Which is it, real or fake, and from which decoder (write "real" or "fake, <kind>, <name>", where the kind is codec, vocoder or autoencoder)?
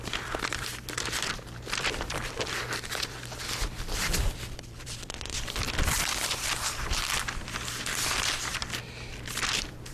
fake, vocoder, BigVGAN v2